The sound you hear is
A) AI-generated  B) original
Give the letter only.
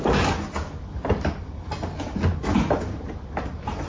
B